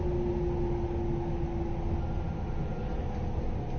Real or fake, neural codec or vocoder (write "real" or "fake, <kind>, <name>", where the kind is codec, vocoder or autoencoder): real